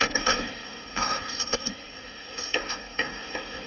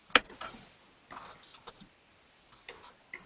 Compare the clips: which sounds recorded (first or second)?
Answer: second